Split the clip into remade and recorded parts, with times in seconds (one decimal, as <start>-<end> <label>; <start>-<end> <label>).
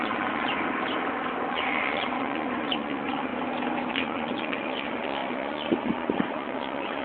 0.0-0.5 remade; 0.5-1.5 recorded; 1.5-3.3 remade; 3.3-3.9 recorded; 3.9-7.0 remade